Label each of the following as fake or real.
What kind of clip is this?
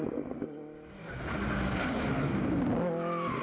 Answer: real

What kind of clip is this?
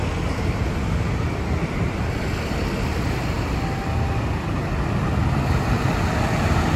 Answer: real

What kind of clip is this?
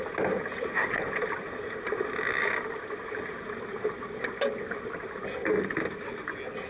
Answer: real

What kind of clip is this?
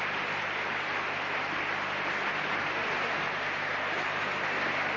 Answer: real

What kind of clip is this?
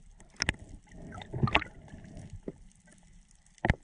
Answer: real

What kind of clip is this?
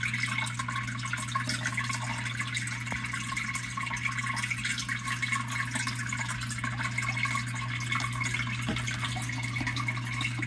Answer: real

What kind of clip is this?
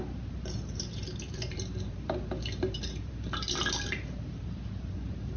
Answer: fake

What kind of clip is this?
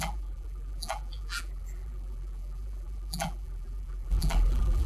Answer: fake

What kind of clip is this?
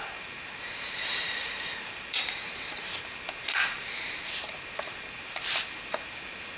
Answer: fake